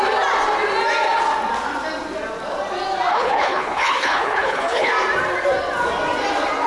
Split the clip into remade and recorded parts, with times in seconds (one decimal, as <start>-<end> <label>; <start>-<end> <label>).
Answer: 0.0-3.1 recorded; 3.1-4.9 remade; 4.9-6.7 recorded